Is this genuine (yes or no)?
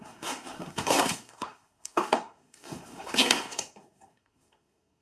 no